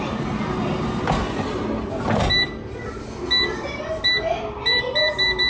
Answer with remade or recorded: recorded